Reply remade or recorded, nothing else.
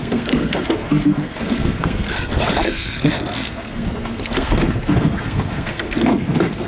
remade